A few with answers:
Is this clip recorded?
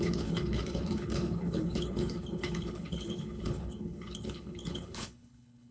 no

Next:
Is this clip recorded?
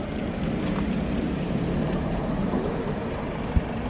no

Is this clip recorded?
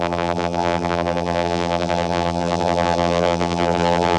no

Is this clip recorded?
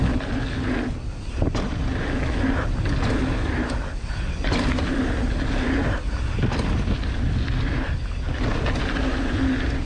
yes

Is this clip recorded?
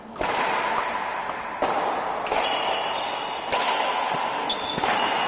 yes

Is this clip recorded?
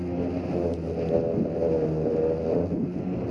yes